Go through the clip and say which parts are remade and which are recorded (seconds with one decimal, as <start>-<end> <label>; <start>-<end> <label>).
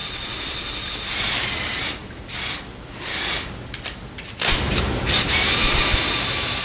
0.0-1.3 recorded; 1.3-6.6 remade